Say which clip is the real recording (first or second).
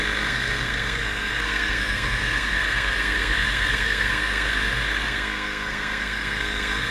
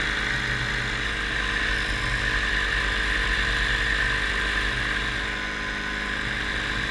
second